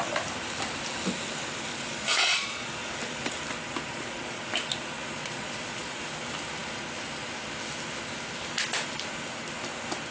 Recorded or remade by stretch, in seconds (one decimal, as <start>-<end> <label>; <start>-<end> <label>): 0.0-1.7 recorded; 1.7-2.7 remade; 2.7-3.9 recorded; 3.9-4.4 remade; 4.4-5.2 recorded; 5.2-6.0 remade; 6.0-10.1 recorded